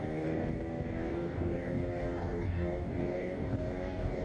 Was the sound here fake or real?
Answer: fake